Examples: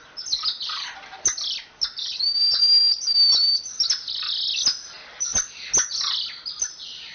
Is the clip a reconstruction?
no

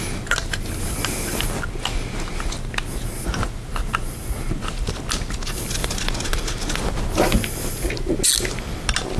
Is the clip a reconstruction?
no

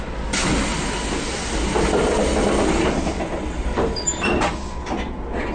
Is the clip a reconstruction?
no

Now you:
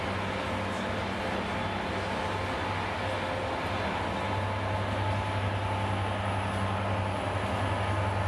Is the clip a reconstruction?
no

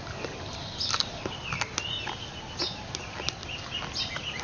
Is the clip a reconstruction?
no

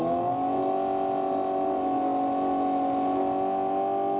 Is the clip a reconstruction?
no